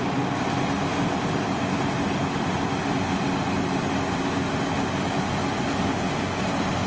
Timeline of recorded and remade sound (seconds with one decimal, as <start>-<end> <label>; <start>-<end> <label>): 0.0-6.9 recorded